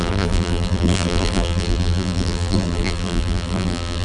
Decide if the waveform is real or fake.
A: fake